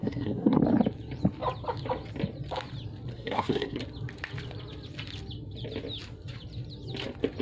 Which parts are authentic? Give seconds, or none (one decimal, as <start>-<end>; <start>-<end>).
0.6-3.1; 3.8-7.4